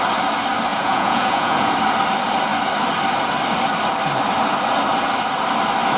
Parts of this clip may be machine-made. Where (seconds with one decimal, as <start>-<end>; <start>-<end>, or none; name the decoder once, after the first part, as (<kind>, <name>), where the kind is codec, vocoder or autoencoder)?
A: 0.7-1.7 (vocoder, Vocos)